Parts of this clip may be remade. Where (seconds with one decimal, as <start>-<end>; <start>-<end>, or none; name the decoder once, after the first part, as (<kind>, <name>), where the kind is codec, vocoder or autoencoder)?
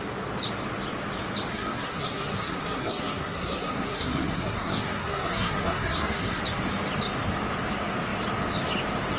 1.5-6.4 (codec, SNAC)